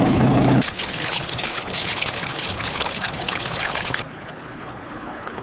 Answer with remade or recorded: remade